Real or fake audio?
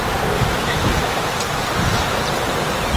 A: fake